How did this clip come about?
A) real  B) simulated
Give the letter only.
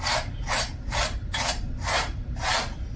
B